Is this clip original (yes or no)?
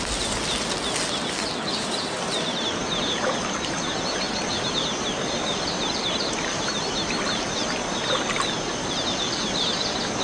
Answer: yes